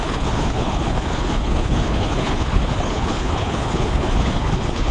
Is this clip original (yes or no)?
no